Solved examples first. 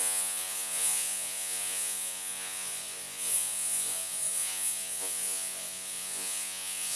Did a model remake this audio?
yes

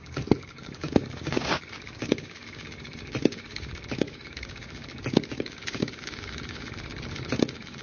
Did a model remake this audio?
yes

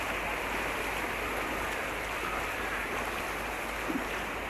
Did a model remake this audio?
no